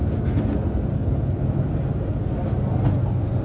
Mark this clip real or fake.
real